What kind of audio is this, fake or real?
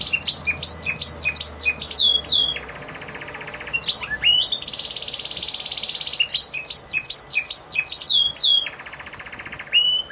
real